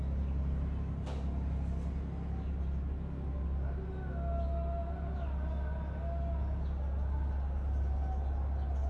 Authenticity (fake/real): real